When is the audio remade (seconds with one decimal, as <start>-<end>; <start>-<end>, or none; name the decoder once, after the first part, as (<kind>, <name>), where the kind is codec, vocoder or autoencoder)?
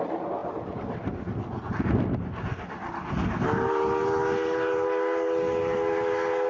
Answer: none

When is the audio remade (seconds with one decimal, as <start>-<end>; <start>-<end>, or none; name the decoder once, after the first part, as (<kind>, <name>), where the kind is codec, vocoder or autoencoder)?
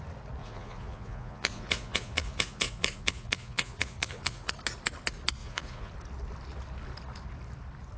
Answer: 0.4-4.5 (vocoder, Vocos); 5.4-5.9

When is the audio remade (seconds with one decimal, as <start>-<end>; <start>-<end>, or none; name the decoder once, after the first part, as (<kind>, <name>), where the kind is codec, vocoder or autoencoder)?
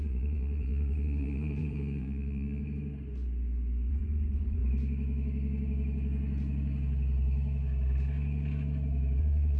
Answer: 0.0-2.6 (vocoder, Vocos); 3.9-4.6; 9.2-9.6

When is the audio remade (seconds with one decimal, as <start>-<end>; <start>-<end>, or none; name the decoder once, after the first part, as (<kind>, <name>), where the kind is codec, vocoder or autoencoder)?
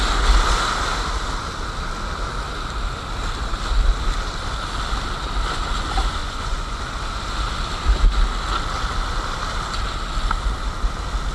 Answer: 6.2-6.8 (vocoder, Vocos)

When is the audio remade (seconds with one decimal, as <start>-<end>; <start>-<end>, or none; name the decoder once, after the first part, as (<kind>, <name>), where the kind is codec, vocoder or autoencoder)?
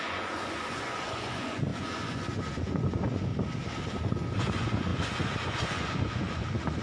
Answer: 0.0-3.3 (vocoder, Vocos); 3.9-6.8